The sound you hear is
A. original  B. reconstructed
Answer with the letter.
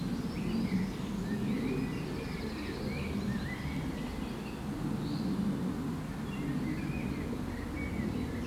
A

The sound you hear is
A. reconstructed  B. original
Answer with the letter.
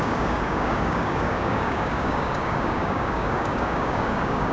A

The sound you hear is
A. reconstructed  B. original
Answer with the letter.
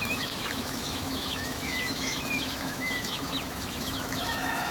A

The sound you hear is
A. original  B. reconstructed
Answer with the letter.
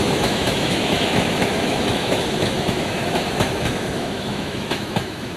B